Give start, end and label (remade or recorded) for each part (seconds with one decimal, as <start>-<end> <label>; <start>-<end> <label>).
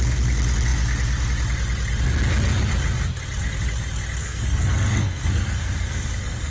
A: 0.0-4.2 recorded; 4.2-6.5 remade